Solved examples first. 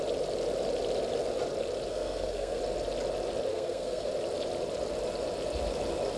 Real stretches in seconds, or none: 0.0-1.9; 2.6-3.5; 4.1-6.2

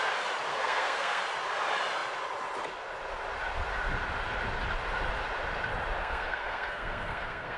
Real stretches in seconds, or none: 0.0-0.5; 1.2-6.0

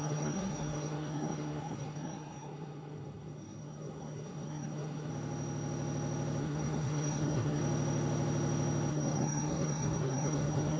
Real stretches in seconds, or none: 5.1-6.4; 7.6-8.9

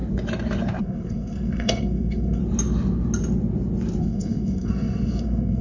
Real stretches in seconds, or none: 0.0-0.8; 2.4-4.0

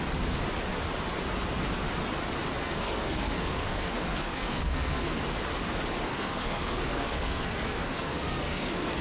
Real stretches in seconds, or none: 0.0-2.6; 5.2-6.1

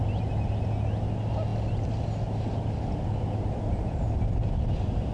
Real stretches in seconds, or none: 0.0-5.1

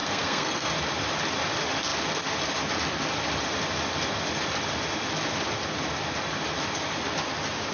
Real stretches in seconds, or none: 0.7-7.7